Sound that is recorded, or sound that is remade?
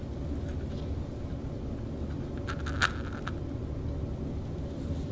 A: recorded